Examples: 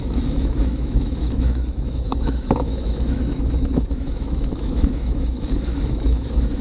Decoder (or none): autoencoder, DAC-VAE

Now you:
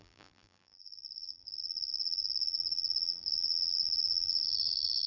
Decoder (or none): vocoder, BigVGAN v2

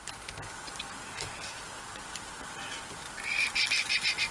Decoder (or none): none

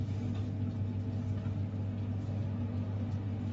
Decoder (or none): none